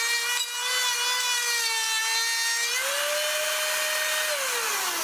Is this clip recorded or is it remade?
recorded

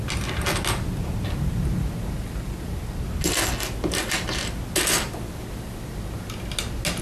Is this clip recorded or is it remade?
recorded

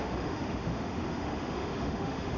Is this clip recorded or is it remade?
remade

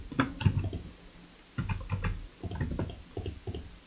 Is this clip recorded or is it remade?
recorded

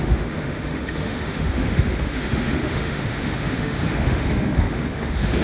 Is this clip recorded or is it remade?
remade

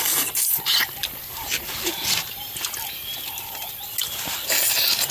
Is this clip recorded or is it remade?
recorded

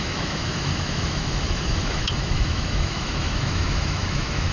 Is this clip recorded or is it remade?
remade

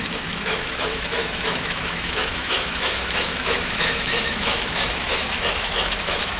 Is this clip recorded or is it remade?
remade